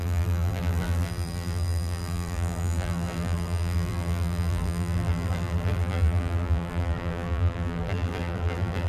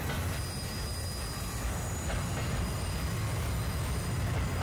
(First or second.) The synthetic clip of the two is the first